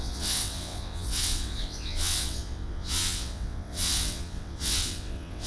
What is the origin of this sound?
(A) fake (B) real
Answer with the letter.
A